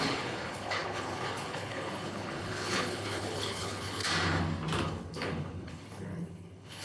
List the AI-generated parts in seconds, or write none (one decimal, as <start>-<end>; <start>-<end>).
0.0-4.0; 4.8-6.8

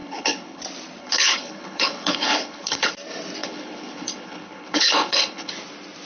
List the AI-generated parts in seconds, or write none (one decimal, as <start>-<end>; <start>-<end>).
0.0-0.6; 1.0-2.9; 3.4-5.5

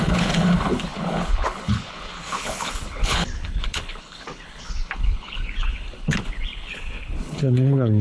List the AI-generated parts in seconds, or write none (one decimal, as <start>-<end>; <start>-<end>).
0.0-8.0

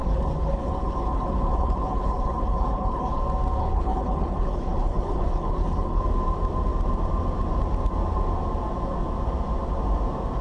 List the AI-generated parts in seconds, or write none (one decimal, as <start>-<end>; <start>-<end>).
0.0-3.2; 3.6-6.0